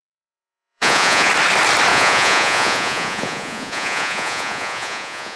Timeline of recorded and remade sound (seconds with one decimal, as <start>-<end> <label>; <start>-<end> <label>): 0.0-1.3 remade; 1.3-1.9 recorded; 1.9-5.4 remade